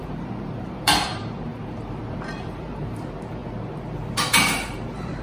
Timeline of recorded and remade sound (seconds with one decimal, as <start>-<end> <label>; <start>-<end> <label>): 0.0-3.4 remade; 3.4-4.3 recorded; 4.3-5.2 remade